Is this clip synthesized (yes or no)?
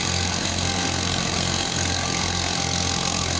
yes